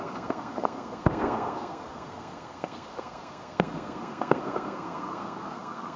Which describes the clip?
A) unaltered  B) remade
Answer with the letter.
B